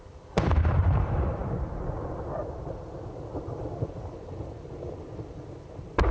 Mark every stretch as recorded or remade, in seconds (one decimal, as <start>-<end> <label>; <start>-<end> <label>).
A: 0.0-6.1 remade